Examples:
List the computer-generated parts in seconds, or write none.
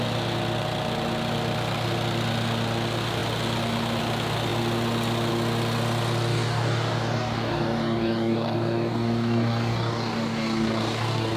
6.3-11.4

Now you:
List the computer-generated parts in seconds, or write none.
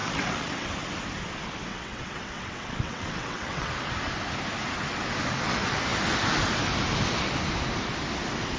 0.0-0.7; 1.7-3.7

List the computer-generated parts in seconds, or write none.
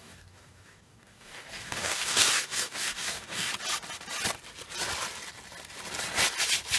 0.0-3.5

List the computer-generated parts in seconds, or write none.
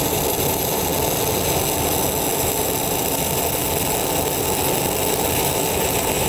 0.0-0.9; 2.3-3.6; 5.3-6.3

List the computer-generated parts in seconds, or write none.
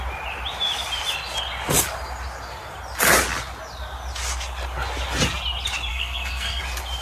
5.9-6.6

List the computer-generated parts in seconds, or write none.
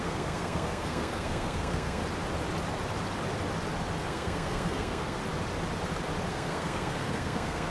0.0-2.0; 4.1-5.2; 6.3-7.7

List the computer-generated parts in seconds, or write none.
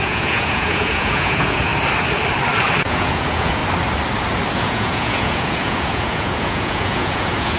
0.0-1.7; 2.8-3.6; 4.5-7.6